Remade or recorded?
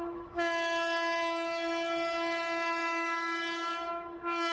remade